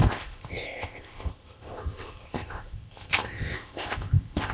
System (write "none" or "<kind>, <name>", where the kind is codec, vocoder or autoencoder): codec, ZipCodec